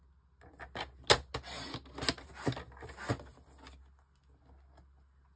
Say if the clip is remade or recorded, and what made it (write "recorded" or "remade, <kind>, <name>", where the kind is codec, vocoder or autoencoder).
recorded